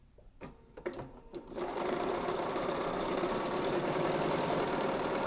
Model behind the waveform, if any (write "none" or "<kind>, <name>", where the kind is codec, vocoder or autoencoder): vocoder, BigVGAN v2